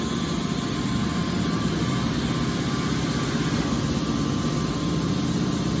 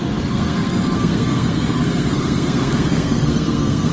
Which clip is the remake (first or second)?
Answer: second